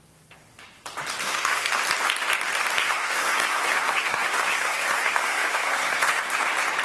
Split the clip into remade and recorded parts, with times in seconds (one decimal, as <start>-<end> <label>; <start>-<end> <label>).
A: 0.0-1.2 recorded; 1.2-1.7 remade; 1.7-2.8 recorded; 2.8-6.3 remade; 6.3-6.8 recorded